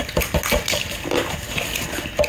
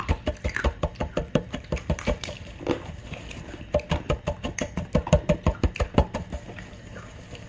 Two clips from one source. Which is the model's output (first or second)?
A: second